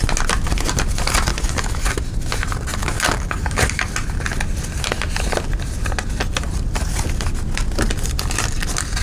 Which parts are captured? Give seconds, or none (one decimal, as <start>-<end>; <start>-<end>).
0.0-1.3; 1.9-2.8; 3.9-9.0